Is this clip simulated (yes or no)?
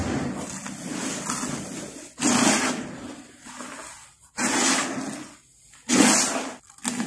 no